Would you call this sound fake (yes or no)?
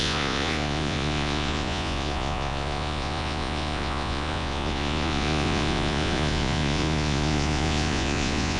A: yes